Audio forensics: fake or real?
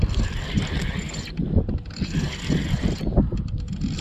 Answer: real